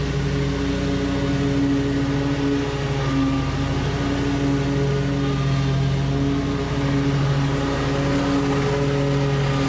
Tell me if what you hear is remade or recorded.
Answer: recorded